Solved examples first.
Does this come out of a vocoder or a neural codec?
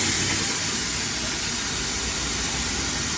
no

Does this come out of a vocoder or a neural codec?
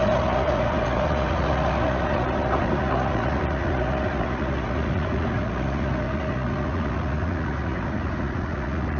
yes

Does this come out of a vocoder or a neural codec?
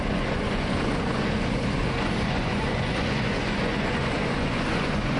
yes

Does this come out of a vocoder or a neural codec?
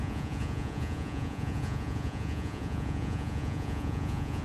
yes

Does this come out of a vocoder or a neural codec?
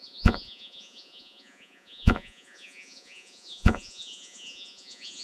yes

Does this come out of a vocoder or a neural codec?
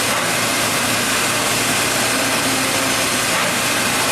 no